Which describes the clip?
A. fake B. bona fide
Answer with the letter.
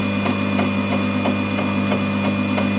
B